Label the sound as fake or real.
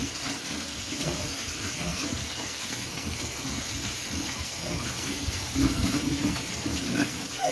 fake